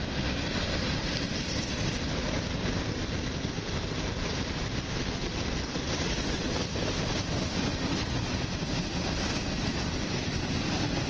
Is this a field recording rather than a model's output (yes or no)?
yes